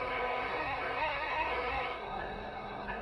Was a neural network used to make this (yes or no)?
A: yes